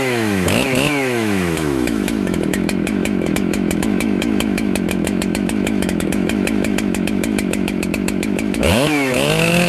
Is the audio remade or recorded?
remade